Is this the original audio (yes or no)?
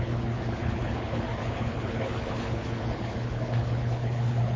no